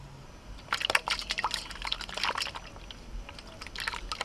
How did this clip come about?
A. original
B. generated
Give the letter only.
A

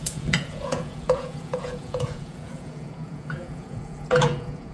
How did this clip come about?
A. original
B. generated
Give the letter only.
B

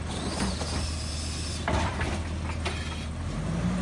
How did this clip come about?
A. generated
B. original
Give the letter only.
B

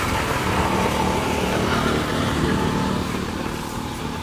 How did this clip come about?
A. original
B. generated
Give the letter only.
B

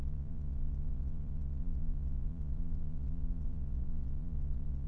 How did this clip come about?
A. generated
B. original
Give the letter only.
A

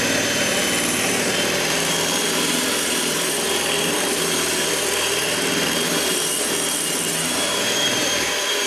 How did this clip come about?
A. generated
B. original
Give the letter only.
A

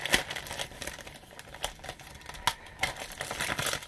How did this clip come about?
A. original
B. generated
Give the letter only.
A